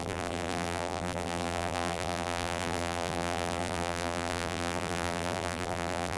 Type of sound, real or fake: fake